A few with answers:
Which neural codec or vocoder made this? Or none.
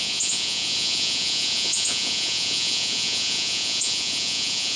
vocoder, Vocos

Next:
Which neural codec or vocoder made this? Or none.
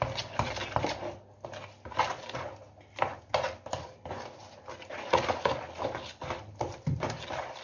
none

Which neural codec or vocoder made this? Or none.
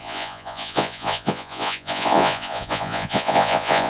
vocoder, Vocos